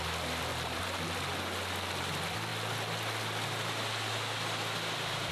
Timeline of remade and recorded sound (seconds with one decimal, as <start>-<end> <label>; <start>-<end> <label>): 0.0-5.3 recorded